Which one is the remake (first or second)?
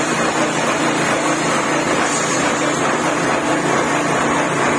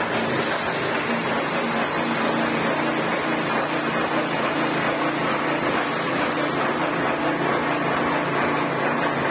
first